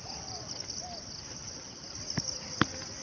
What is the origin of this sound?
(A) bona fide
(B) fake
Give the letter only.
A